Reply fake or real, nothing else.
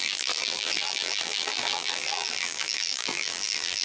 fake